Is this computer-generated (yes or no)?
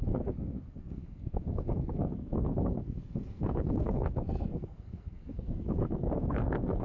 yes